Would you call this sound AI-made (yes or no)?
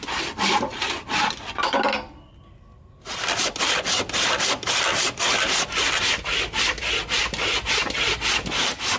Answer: no